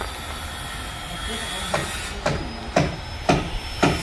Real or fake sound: real